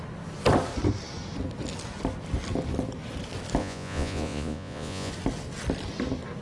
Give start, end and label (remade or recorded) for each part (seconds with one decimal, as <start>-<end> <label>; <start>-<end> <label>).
0.0-3.6 recorded; 3.6-5.1 remade; 5.1-6.4 recorded